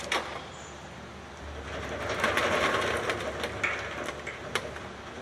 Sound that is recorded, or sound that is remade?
recorded